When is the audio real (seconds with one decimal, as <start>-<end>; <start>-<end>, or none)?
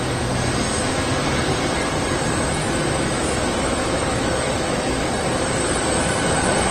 0.0-2.6; 5.1-6.7